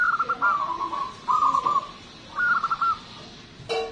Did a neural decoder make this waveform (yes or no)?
no